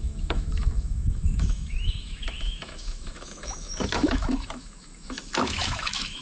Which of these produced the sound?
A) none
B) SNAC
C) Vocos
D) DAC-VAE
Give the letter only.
D